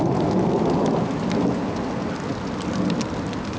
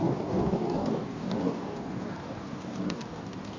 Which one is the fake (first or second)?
second